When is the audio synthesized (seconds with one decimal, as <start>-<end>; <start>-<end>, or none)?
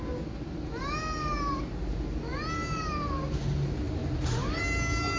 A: 4.0-4.6